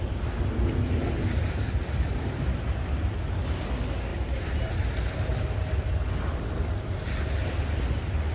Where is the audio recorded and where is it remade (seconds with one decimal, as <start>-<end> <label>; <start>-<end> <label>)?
0.0-8.3 recorded